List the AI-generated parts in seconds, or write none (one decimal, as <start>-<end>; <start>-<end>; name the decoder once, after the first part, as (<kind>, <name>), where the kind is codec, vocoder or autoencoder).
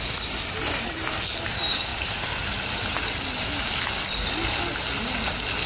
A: none